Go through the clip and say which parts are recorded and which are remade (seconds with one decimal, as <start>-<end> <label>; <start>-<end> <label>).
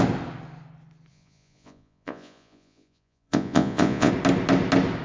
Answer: 0.0-1.1 recorded; 1.1-4.1 remade; 4.1-5.0 recorded